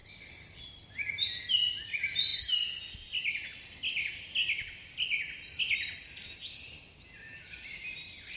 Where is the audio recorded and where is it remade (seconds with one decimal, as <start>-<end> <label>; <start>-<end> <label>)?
0.0-8.4 recorded